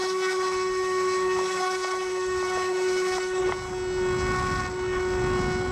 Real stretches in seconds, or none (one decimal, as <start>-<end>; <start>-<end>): 3.4-5.7